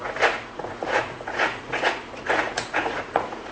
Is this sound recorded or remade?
remade